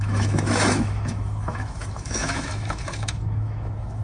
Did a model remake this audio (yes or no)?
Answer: yes